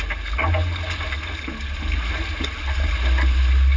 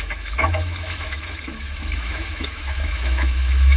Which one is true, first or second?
first